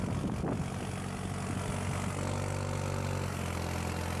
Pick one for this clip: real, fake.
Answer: real